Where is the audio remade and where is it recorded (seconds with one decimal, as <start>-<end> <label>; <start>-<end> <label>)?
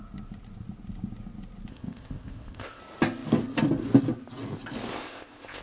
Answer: 0.0-1.7 recorded; 1.7-2.8 remade; 2.8-4.9 recorded; 4.9-5.6 remade